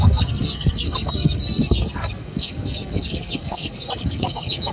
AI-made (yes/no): yes